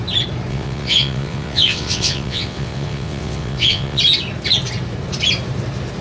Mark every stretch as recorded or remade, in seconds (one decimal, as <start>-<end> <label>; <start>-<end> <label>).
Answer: 0.0-0.5 recorded; 0.5-4.0 remade; 4.0-6.0 recorded